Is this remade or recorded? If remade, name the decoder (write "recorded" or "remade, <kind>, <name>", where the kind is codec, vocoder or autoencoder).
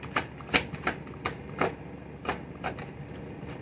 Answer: recorded